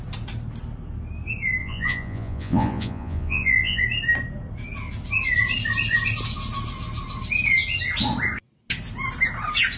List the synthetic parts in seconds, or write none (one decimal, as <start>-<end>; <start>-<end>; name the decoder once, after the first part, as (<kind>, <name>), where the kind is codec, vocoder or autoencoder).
1.6-3.8 (vocoder, Vocos)